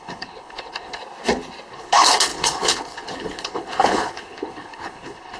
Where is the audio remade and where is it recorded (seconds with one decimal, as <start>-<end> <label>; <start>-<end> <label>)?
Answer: 0.0-1.0 remade; 1.0-1.7 recorded; 1.7-5.4 remade